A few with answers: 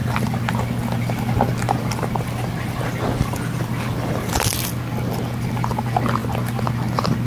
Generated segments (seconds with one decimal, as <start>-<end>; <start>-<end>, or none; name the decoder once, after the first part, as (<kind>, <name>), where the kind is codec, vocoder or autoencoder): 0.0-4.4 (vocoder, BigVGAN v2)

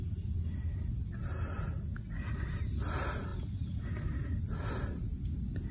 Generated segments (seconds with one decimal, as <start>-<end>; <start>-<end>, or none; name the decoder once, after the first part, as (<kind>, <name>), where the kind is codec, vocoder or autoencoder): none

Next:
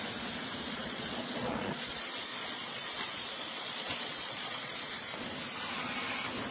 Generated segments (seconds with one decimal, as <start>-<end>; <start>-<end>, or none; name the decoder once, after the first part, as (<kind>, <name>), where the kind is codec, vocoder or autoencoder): 0.8-4.7 (vocoder, Vocos)

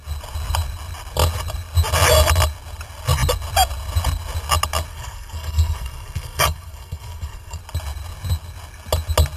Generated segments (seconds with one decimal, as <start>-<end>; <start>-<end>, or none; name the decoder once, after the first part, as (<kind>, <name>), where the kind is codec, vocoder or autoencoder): 4.9-7.6 (codec, SNAC)